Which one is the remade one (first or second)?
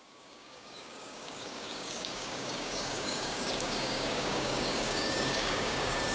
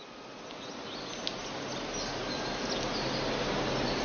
first